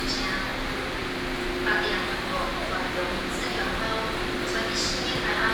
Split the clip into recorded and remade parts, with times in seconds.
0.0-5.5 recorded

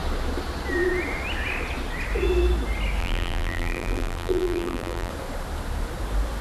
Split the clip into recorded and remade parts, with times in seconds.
0.0-3.0 recorded; 3.0-5.1 remade; 5.1-6.4 recorded

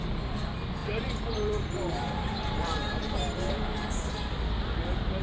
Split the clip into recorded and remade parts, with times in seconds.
0.0-0.8 recorded; 0.8-3.9 remade; 3.9-5.2 recorded

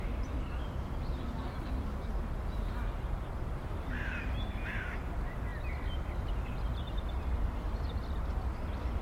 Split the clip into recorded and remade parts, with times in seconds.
0.0-3.6 recorded; 3.6-5.0 remade; 5.0-9.0 recorded

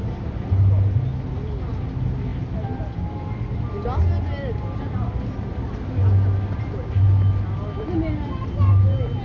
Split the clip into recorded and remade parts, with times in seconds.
0.0-9.2 recorded